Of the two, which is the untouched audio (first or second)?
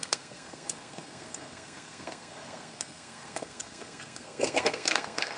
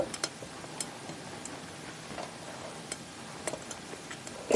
second